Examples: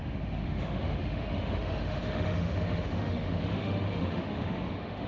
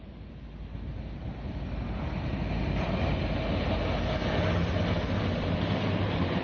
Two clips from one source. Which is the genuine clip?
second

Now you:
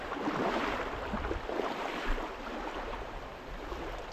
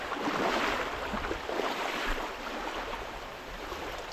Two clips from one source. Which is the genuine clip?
first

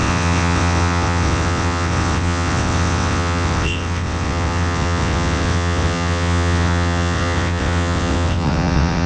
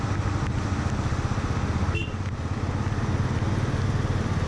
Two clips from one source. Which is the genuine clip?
second